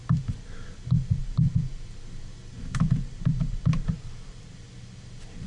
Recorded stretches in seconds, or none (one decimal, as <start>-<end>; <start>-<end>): 0.0-5.5